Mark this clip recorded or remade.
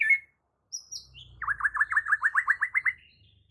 recorded